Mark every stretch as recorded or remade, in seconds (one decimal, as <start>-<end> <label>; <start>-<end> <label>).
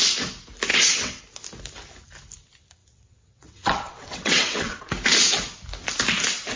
0.0-0.7 recorded; 0.7-1.2 remade; 1.2-2.8 recorded; 2.8-4.8 remade; 4.8-6.6 recorded